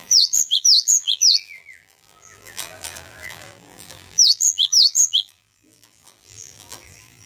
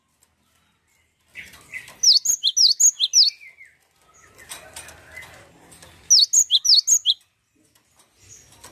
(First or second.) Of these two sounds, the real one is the second